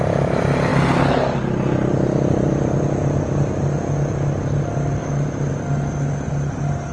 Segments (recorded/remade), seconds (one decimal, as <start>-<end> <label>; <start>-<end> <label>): 0.0-5.0 recorded; 5.0-5.5 remade; 5.5-6.9 recorded